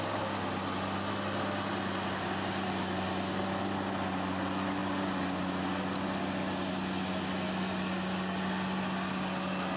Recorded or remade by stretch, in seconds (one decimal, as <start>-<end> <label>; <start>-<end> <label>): 0.0-9.8 recorded